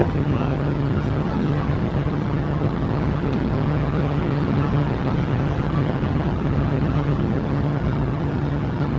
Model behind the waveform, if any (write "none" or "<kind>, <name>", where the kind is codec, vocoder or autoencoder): vocoder, HiFi-GAN